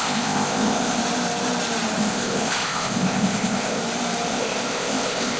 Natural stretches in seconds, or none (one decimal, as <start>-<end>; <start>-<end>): 1.0-2.0; 3.8-4.3